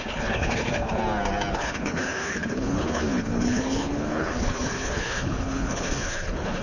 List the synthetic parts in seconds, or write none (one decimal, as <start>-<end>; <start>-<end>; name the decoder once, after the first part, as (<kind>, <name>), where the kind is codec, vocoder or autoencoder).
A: 0.0-1.0 (codec, HILCodec); 1.5-6.6